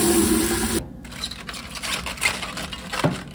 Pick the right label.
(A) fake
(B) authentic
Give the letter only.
B